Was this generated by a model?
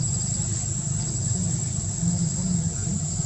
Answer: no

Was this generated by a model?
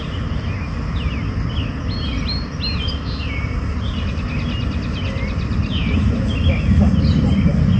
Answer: no